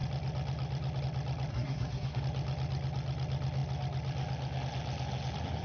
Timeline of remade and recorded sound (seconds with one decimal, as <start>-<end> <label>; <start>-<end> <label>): 0.0-1.5 recorded; 1.5-2.2 remade; 2.2-5.6 recorded